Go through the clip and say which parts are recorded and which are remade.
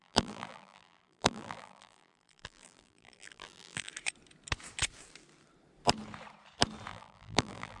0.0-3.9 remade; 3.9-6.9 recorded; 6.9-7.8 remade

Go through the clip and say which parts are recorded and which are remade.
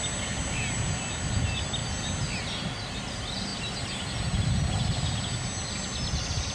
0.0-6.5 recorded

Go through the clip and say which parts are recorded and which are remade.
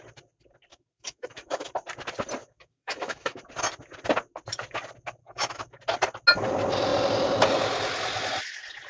0.0-0.7 recorded; 0.7-1.7 remade; 1.7-2.4 recorded; 2.4-3.4 remade; 3.4-5.2 recorded; 5.2-5.8 remade; 5.8-8.9 recorded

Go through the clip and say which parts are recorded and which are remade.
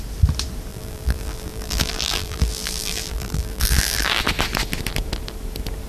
0.0-0.7 recorded; 0.7-4.2 remade; 4.2-5.9 recorded